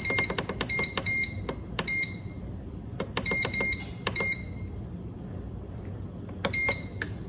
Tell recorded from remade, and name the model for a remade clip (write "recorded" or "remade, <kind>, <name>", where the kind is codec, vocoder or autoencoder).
recorded